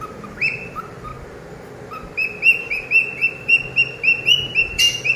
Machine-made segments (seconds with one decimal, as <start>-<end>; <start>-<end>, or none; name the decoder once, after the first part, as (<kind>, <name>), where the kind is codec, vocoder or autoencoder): 0.0-1.1 (vocoder, BigVGAN v2); 4.2-5.2